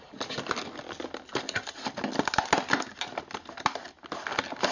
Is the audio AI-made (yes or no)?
no